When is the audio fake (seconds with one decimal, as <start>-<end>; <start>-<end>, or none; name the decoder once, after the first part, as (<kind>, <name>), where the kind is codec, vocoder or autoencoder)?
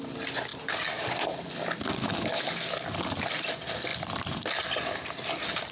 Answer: 2.0-2.5 (autoencoder, DAC-VAE)